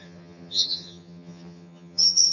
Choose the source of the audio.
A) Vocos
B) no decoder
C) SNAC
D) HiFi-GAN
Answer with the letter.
D